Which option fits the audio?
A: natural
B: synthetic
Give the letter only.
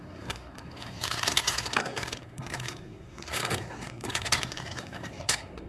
B